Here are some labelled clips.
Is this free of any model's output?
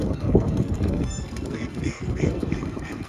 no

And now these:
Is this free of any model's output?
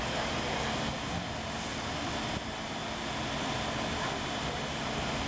yes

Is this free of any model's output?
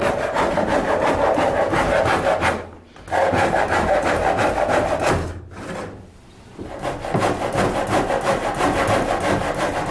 yes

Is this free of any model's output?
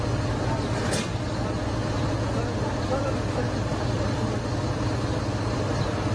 yes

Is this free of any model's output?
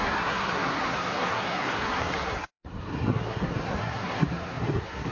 no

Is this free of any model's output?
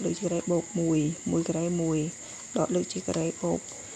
yes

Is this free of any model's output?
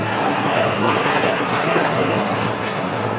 no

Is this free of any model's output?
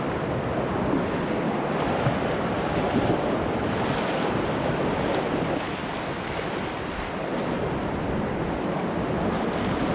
yes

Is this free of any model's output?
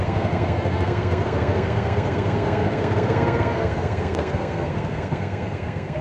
no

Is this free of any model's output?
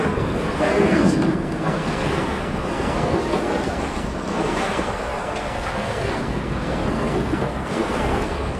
no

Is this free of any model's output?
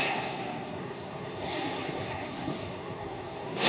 no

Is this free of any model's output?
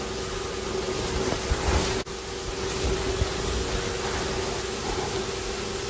yes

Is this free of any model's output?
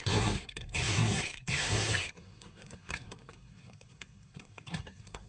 no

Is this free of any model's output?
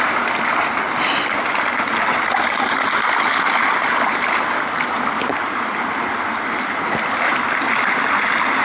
yes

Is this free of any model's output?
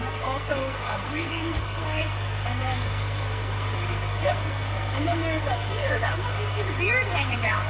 no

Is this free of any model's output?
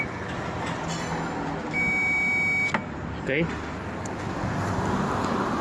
yes